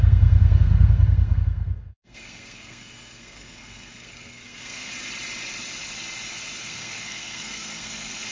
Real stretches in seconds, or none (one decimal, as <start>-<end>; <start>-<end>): 4.9-6.6